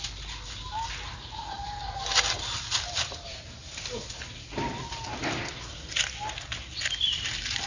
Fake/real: real